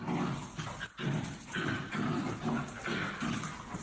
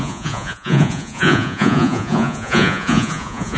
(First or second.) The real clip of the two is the first